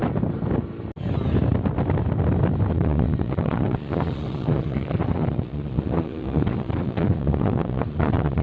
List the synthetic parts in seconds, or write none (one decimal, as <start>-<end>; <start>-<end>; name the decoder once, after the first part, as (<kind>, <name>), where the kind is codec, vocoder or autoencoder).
2.7-8.4 (vocoder, Vocos)

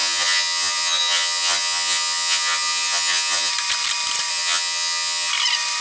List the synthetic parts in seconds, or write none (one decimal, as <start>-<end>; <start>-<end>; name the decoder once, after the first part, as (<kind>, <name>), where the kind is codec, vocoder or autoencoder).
0.0-3.5 (vocoder, HiFi-GAN); 4.3-5.3

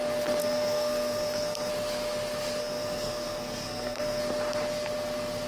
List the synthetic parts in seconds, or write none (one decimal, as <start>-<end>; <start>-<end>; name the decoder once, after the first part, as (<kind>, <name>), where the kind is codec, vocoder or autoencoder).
0.4-1.7 (codec, SNAC); 2.6-4.2

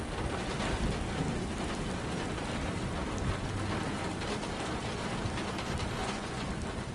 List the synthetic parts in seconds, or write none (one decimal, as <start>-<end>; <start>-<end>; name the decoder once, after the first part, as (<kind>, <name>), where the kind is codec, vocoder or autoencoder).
6.0-6.5 (vocoder, Vocos)

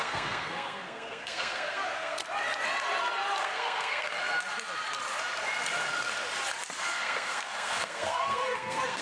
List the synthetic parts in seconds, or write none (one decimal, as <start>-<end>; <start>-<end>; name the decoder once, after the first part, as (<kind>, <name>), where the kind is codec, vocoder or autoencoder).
0.0-2.2 (codec, SNAC); 3.4-4.1; 6.8-9.0

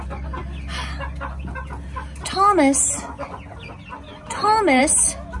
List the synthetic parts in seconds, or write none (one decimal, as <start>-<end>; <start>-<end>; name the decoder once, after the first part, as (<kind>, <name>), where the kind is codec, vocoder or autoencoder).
none

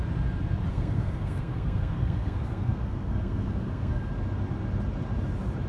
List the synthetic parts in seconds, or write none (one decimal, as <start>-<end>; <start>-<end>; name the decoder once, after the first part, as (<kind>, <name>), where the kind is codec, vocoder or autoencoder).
0.7-4.1 (codec, SNAC)